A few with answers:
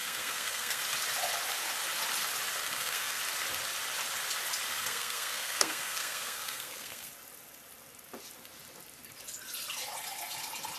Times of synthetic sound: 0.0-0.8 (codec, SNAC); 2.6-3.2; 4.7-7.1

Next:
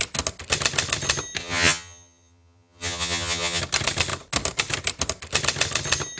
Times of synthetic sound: 1.4-3.6 (vocoder, HiFi-GAN)

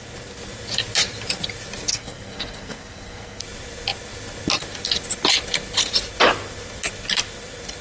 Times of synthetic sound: 1.9-3.4 (codec, SNAC)

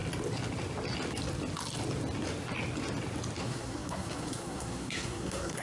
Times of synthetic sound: 3.4-5.6 (codec, SNAC)

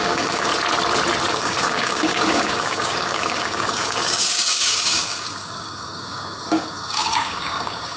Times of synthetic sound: 0.0-0.5 (codec, DAC); 1.3-8.0